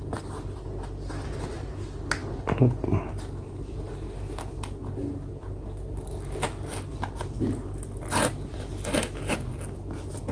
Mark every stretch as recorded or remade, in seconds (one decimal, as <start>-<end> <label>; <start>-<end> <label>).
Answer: 0.0-10.3 recorded